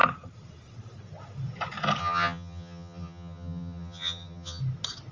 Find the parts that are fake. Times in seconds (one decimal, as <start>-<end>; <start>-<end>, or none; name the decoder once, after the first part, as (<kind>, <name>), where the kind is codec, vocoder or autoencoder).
2.0-4.6 (vocoder, HiFi-GAN)